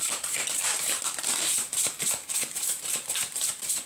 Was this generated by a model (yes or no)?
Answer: yes